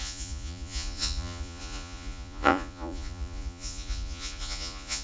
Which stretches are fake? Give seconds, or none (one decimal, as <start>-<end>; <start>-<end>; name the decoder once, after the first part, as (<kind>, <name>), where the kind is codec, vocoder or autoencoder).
0.0-5.0 (vocoder, Vocos)